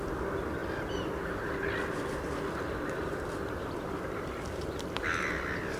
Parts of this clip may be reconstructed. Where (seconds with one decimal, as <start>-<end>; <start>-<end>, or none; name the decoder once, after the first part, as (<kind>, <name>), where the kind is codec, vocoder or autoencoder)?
none